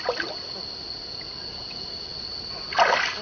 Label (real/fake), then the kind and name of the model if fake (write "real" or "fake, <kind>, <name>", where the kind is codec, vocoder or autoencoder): real